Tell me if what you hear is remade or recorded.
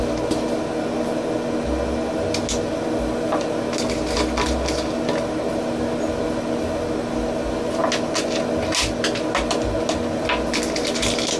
recorded